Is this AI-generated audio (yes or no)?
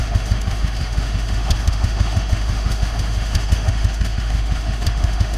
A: yes